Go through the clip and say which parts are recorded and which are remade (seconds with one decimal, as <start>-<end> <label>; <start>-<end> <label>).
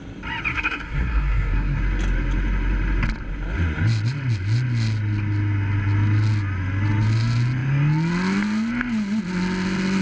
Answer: 0.0-0.5 recorded; 0.5-1.8 remade; 1.8-10.0 recorded